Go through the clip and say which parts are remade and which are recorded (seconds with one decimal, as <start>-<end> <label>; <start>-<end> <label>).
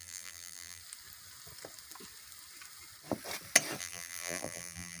0.0-0.8 remade; 0.8-3.8 recorded; 3.8-5.0 remade